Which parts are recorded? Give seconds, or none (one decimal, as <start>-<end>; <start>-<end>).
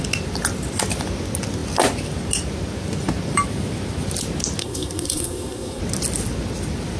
0.0-4.6; 5.8-7.0